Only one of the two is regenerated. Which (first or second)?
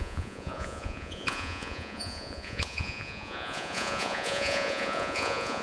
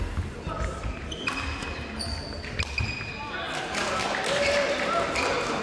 first